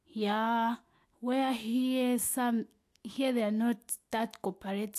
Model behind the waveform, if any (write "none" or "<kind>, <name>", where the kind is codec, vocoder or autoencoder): autoencoder, DAC-VAE